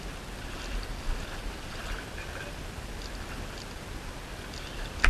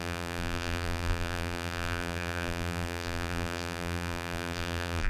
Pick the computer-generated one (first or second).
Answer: second